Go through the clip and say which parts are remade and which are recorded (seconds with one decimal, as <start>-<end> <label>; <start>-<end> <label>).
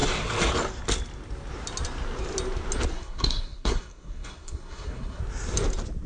0.0-2.9 recorded; 2.9-5.2 remade; 5.2-6.1 recorded